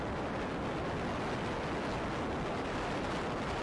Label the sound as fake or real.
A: real